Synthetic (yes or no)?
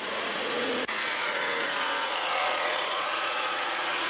yes